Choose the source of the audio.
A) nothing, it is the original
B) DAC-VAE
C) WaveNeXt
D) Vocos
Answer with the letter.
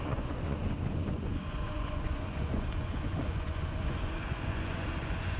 D